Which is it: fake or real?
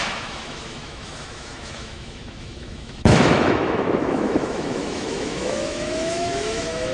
fake